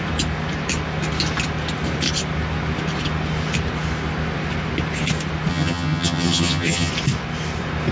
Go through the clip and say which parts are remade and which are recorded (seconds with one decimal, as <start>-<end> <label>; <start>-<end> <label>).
0.0-5.5 recorded; 5.5-6.9 remade; 6.9-7.9 recorded